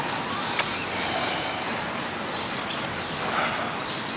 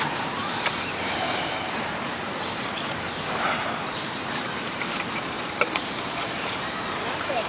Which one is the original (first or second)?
first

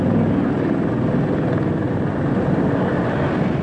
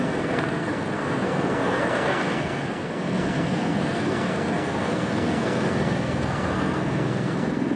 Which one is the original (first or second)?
first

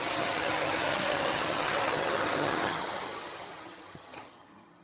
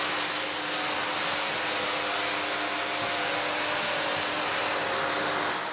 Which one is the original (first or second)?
second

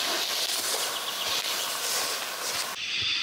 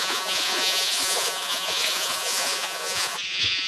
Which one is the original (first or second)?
first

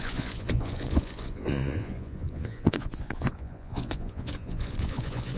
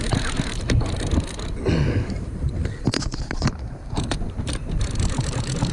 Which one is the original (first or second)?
second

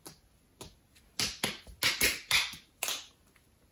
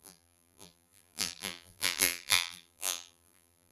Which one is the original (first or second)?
first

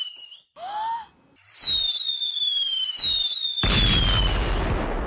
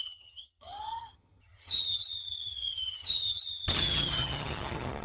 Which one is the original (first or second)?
first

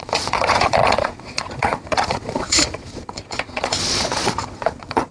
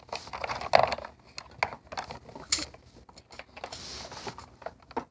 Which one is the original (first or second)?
second